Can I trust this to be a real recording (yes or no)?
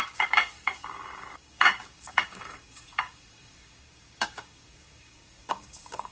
no